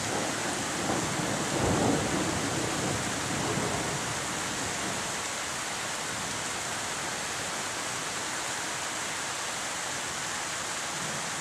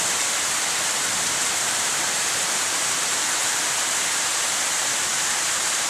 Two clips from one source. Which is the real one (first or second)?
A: first